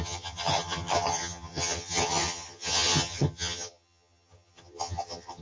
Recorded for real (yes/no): no